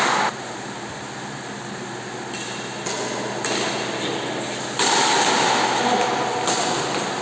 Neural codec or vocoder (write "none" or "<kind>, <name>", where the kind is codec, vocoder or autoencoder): none